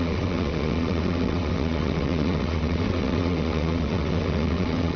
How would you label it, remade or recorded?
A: remade